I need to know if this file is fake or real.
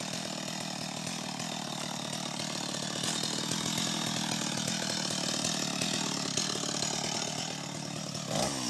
real